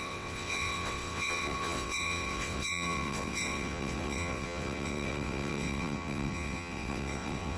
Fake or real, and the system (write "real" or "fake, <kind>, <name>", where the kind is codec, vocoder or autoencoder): fake, vocoder, WaveNeXt